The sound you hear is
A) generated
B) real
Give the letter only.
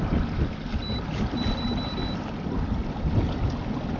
B